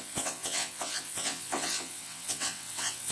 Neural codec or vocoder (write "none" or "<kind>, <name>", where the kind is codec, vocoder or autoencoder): vocoder, WaveNeXt